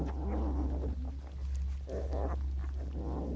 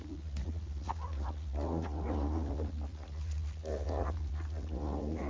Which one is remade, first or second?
second